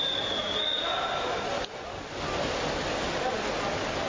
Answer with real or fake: real